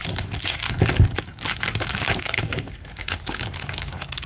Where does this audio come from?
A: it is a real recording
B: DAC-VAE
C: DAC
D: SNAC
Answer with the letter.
C